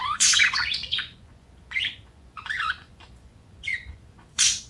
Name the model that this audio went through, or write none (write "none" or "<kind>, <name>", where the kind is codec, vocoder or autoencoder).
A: vocoder, Vocos